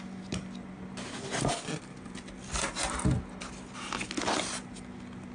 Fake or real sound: real